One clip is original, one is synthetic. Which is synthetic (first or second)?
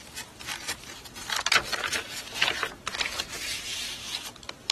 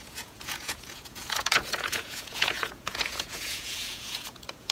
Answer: second